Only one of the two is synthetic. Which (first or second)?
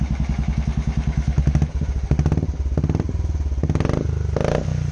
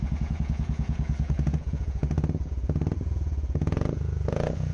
second